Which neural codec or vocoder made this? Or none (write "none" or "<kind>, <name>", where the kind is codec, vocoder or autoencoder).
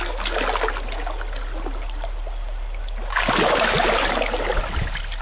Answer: none